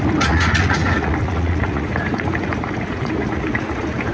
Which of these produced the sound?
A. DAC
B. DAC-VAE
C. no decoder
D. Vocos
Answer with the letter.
D